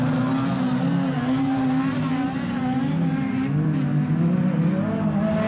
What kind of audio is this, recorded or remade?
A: recorded